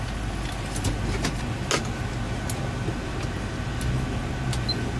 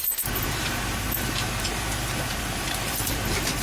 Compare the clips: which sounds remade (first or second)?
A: second